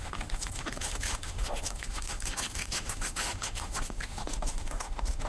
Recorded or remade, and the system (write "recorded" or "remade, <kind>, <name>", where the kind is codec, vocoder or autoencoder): remade, autoencoder, DAC-VAE